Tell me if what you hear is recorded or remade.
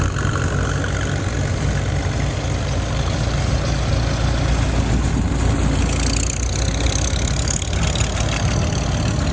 recorded